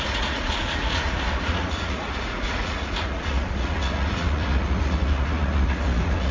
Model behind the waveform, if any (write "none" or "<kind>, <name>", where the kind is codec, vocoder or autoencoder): vocoder, Vocos